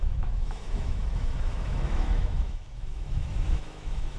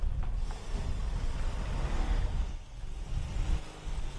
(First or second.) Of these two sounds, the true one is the second